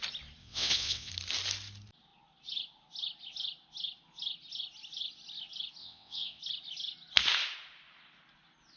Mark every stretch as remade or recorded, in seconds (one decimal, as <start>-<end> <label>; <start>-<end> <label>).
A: 0.0-0.4 recorded; 0.4-1.1 remade; 1.1-5.8 recorded; 5.8-6.4 remade; 6.4-8.8 recorded